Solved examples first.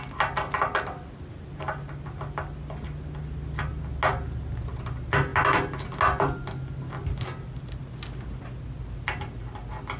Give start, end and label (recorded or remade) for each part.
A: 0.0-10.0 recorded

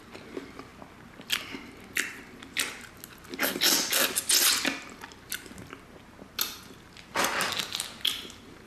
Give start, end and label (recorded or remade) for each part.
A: 0.0-8.7 recorded

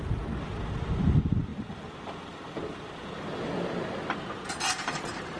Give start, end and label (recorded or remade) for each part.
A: 0.0-5.4 recorded

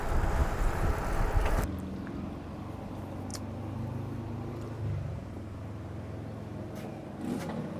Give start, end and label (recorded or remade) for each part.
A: 0.0-0.4 recorded; 0.4-0.9 remade; 0.9-7.8 recorded

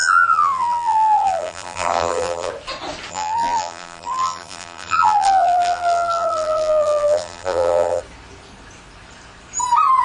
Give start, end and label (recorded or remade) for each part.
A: 0.0-2.5 remade; 2.5-3.1 recorded; 3.1-8.0 remade; 8.0-10.0 recorded